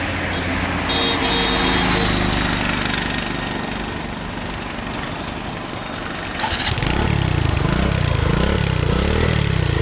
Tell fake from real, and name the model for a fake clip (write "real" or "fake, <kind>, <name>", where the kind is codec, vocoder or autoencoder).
real